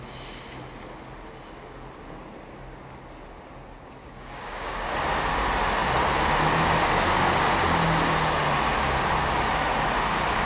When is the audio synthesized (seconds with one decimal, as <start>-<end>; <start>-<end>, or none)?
4.0-4.9